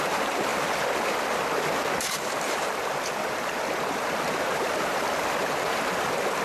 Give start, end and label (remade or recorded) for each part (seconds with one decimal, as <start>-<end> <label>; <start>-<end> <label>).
0.0-0.5 remade; 0.5-4.3 recorded; 4.3-4.9 remade; 4.9-5.5 recorded; 5.5-6.4 remade